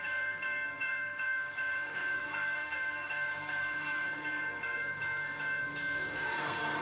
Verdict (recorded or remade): remade